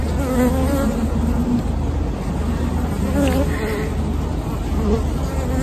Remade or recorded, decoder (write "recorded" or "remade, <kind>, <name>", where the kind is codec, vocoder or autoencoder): recorded